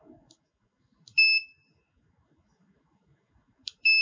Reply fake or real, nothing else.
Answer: fake